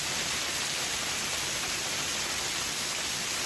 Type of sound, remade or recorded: recorded